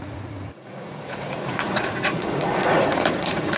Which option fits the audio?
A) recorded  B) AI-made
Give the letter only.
B